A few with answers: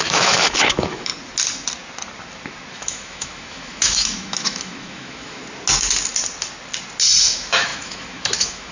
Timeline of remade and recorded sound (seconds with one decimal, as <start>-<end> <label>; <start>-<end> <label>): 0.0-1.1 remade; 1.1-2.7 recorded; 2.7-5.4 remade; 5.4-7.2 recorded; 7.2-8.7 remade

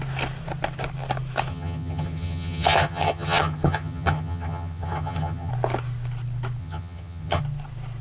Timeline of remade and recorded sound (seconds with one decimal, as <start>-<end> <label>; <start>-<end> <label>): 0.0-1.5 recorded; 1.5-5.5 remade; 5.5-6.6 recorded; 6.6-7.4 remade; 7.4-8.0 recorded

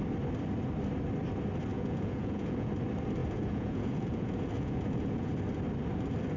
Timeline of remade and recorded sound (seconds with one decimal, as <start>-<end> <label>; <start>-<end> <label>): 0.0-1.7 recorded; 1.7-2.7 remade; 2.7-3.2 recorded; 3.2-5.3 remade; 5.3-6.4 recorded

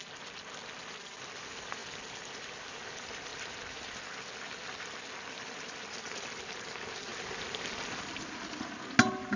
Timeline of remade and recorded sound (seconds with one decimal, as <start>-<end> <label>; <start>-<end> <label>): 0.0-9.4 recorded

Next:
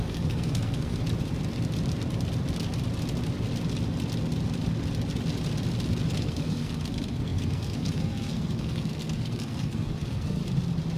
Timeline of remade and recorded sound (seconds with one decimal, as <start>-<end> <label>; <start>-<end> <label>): 0.0-1.0 remade; 1.0-6.1 recorded; 6.1-10.4 remade; 10.4-11.0 recorded